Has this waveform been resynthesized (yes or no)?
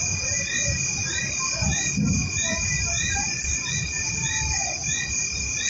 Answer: no